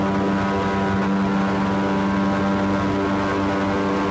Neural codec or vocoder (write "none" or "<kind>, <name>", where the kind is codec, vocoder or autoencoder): none